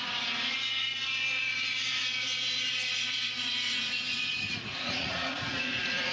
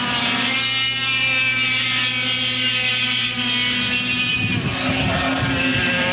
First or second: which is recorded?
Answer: second